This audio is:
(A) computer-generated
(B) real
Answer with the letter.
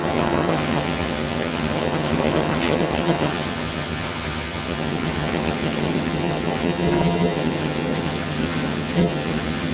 A